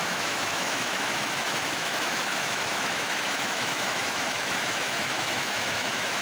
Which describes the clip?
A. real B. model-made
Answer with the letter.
B